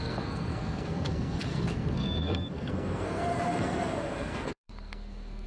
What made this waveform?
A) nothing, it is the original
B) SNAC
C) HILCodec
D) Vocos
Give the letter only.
B